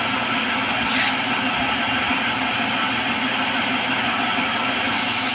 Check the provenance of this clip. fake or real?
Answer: real